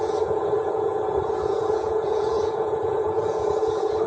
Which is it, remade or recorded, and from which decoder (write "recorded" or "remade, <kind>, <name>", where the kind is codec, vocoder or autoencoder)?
remade, vocoder, Vocos